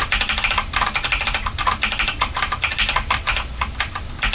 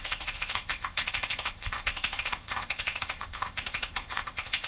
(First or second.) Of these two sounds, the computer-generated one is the second